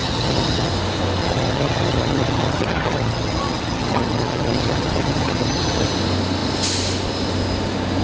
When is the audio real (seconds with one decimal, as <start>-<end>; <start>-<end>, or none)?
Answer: 0.7-1.2; 5.9-8.0